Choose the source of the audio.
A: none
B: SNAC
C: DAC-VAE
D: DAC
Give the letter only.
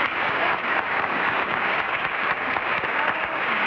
D